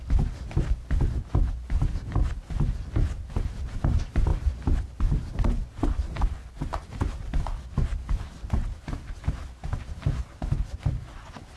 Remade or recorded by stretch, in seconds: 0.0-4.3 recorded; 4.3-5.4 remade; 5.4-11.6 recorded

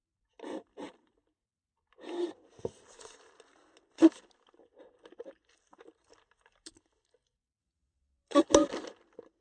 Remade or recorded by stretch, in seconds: 0.0-7.6 recorded; 7.6-8.5 remade; 8.5-9.4 recorded

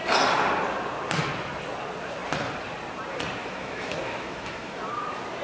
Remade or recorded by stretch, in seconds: 0.0-3.4 recorded; 3.4-4.8 remade; 4.8-5.4 recorded

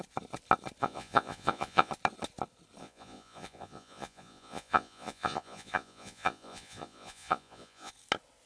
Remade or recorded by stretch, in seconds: 0.0-0.8 recorded; 0.8-1.9 remade; 1.9-2.8 recorded; 2.8-7.9 remade; 7.9-8.5 recorded

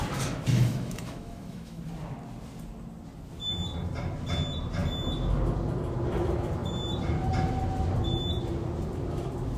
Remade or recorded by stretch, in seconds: 0.0-0.5 recorded; 0.5-1.8 remade; 1.8-9.6 recorded

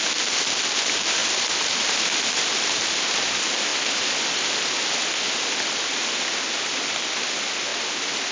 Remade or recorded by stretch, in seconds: 0.0-8.3 recorded

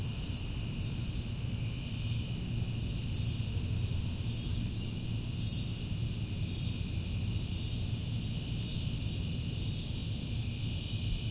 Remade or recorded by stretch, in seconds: 0.0-4.5 recorded; 4.5-5.0 remade; 5.0-11.3 recorded